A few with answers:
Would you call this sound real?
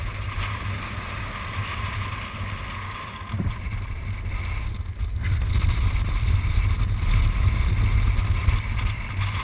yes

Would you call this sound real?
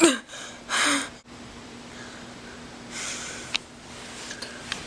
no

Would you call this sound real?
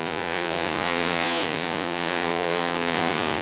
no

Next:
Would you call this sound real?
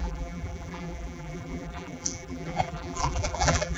no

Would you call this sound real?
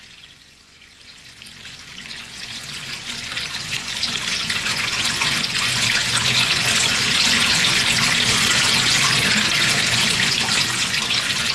no